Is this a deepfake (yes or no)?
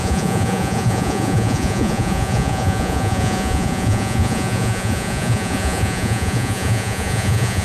yes